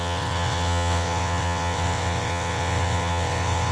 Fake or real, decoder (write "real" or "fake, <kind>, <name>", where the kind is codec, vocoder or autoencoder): fake, vocoder, WaveNeXt